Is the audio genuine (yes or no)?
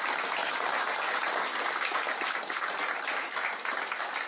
yes